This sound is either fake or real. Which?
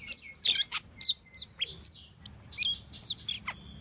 real